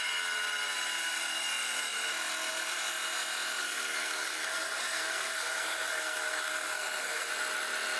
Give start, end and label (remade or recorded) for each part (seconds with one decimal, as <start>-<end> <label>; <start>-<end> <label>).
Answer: 0.0-3.6 recorded; 3.6-7.3 remade; 7.3-8.0 recorded